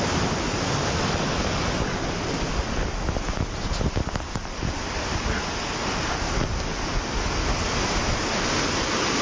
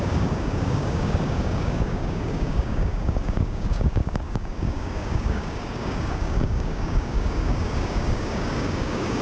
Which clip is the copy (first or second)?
second